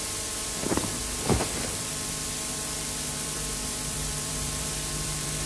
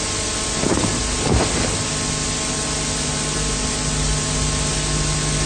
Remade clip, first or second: first